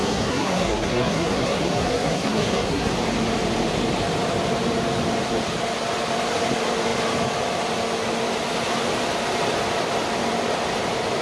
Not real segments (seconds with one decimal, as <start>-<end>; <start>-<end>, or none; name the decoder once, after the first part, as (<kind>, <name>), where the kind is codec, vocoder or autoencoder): 0.0-2.9 (codec, SNAC)